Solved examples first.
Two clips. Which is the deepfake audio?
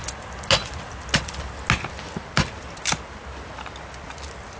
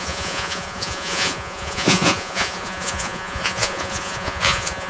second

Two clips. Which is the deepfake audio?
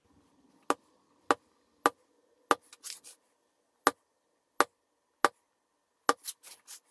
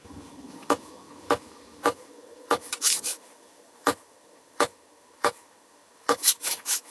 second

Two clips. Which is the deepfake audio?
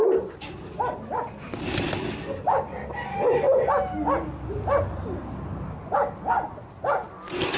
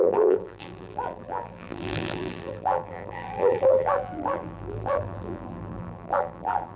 second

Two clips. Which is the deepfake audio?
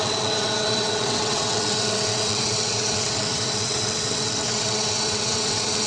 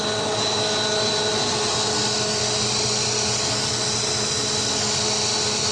first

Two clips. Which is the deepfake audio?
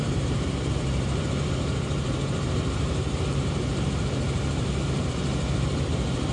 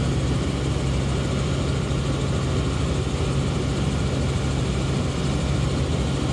first